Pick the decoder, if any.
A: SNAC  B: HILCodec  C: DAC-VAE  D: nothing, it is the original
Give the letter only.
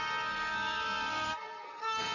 A